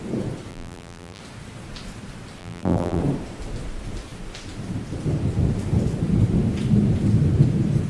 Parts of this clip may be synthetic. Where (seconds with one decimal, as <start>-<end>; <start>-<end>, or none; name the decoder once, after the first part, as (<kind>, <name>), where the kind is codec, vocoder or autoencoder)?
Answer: 0.5-1.2 (vocoder, BigVGAN v2); 2.4-3.0